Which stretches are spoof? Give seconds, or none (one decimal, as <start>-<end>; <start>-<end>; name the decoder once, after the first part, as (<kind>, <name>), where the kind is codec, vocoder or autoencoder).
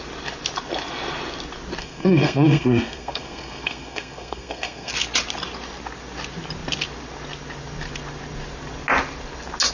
1.8-4.9 (codec, SNAC)